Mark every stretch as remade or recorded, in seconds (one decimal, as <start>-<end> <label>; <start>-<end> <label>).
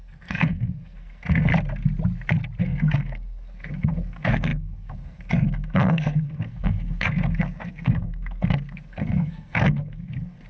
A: 0.0-1.5 remade; 1.5-2.6 recorded; 2.6-10.5 remade